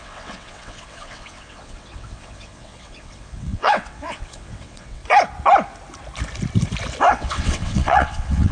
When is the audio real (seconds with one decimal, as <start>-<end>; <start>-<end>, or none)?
5.0-7.1